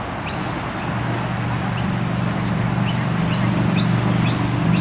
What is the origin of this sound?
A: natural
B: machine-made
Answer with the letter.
A